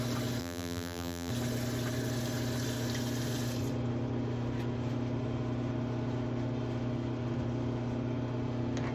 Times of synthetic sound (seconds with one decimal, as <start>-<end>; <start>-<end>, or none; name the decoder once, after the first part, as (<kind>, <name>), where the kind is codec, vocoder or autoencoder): 0.4-1.3 (vocoder, BigVGAN v2)